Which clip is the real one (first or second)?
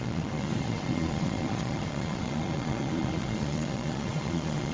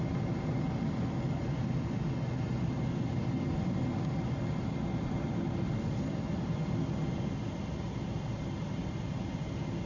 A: second